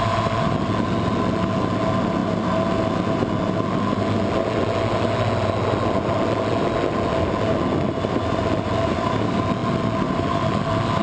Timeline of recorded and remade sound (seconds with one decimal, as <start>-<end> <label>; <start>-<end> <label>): 0.0-11.0 recorded